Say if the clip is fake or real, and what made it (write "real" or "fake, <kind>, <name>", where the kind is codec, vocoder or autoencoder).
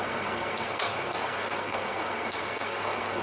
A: fake, codec, SNAC